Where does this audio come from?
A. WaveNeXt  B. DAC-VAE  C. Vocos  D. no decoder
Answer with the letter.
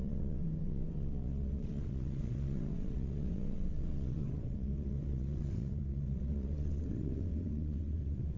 A